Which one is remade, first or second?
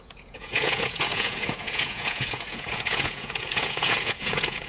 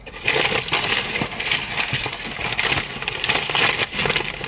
first